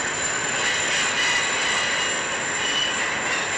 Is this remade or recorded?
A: recorded